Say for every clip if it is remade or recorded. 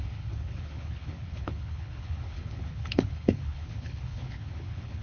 remade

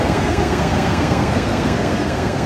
remade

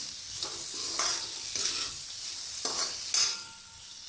recorded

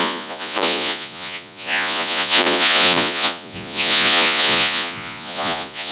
remade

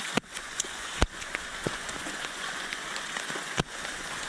remade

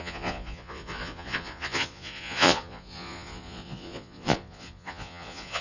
remade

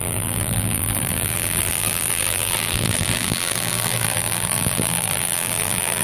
remade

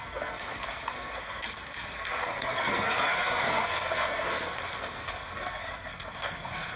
remade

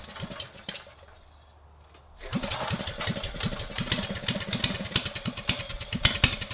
recorded